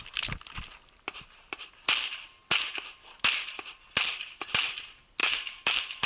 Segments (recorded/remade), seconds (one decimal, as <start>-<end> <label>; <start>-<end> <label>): 0.0-5.2 recorded; 5.2-6.1 remade